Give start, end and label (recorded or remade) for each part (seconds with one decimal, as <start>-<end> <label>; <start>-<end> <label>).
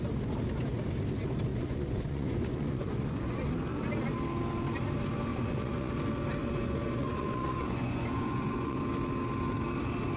0.0-1.5 recorded; 1.5-3.4 remade; 3.4-5.3 recorded; 5.3-5.9 remade; 5.9-6.4 recorded; 6.4-8.8 remade; 8.8-10.2 recorded